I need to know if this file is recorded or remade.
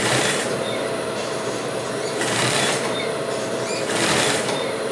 remade